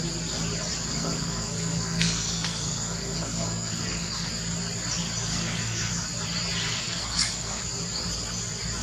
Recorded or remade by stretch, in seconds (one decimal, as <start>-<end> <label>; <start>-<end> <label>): 0.0-0.9 recorded; 0.9-4.3 remade; 4.3-5.3 recorded; 5.3-5.9 remade; 5.9-6.7 recorded; 6.7-7.6 remade; 7.6-8.8 recorded